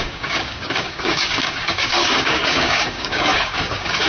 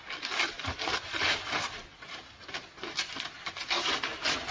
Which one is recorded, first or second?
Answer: second